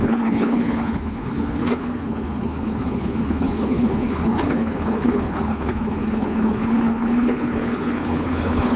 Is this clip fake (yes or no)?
yes